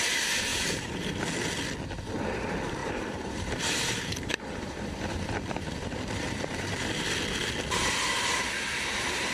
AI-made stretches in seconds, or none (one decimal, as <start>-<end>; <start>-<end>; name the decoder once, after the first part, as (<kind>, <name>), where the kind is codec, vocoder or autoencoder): 0.5-1.2 (vocoder, BigVGAN v2); 2.8-6.8